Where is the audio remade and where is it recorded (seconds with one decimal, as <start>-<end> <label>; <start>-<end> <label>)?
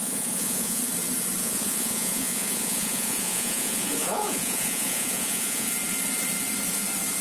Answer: 0.0-0.8 remade; 0.8-1.4 recorded; 1.4-5.7 remade; 5.7-7.2 recorded